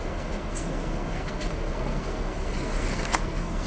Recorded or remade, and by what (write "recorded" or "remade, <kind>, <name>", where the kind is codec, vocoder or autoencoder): remade, codec, SNAC